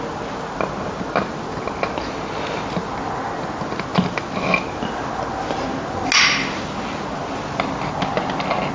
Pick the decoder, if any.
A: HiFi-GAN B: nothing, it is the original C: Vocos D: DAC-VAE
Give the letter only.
B